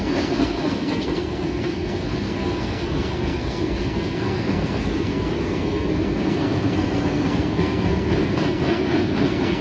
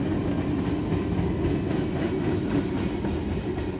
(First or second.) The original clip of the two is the second